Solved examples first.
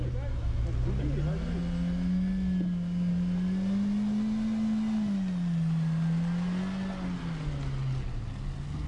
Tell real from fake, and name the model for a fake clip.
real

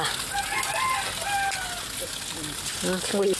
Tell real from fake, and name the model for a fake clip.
real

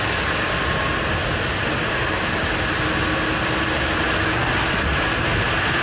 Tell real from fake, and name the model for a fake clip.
real